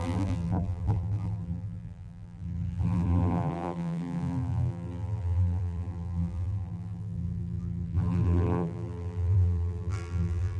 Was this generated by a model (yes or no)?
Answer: yes